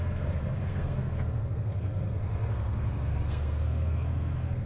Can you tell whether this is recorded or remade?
remade